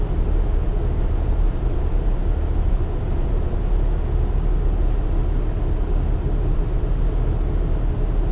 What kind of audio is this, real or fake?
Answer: real